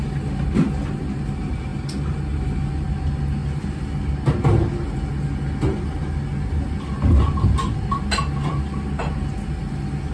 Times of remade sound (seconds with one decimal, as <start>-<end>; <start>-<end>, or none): none